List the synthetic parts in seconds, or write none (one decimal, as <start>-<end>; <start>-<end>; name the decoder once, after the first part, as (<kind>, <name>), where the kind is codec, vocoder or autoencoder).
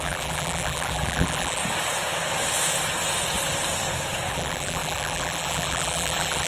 0.0-1.6 (vocoder, BigVGAN v2); 4.3-6.5